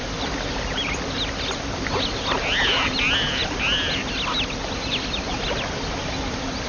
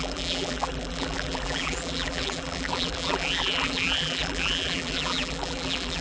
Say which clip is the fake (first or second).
second